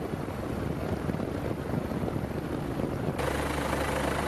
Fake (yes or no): no